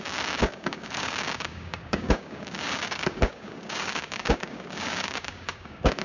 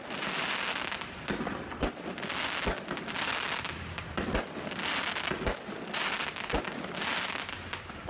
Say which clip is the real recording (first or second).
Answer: second